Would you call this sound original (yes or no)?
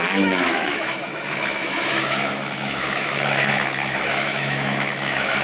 no